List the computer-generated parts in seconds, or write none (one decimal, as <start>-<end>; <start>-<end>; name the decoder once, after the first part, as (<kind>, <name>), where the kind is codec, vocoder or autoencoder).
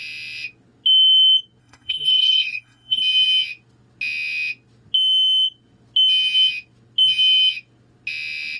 1.6-3.0 (codec, SNAC)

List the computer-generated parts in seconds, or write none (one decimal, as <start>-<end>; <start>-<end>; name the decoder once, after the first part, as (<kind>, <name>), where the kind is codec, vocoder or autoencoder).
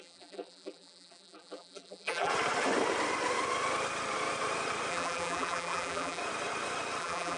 0.0-2.3 (vocoder, BigVGAN v2); 4.9-6.2; 7.0-7.4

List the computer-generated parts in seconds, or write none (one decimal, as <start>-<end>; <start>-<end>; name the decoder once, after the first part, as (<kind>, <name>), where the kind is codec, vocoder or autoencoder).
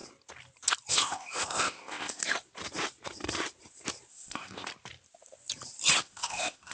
0.9-2.2 (codec, ZipCodec); 4.1-4.7; 6.0-6.7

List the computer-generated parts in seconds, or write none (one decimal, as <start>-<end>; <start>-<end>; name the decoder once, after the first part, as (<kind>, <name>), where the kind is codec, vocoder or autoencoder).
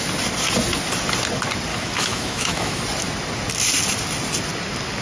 1.7-2.8 (autoencoder, DAC-VAE)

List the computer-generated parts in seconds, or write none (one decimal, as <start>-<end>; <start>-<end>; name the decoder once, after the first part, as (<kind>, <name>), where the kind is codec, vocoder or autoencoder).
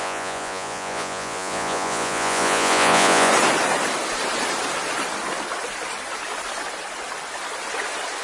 0.0-3.3 (vocoder, Vocos)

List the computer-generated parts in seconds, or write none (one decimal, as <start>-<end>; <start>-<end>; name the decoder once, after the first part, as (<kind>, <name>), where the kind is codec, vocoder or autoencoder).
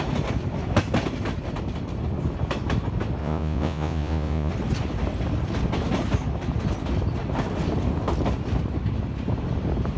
3.2-4.5 (vocoder, Vocos)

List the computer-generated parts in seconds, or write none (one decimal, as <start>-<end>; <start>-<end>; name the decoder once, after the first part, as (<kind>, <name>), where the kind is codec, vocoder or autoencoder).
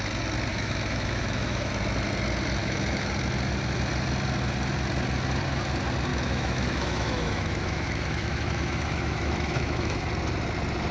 0.5-1.7 (autoencoder, DAC-VAE); 2.6-3.1; 6.1-10.0